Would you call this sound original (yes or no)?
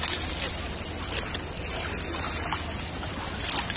yes